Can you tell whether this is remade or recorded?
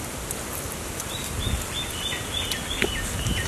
recorded